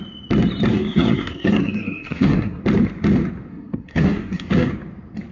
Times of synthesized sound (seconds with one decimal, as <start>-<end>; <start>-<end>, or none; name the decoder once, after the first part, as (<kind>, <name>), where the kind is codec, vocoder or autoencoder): 0.7-2.6 (codec, SNAC); 3.5-4.7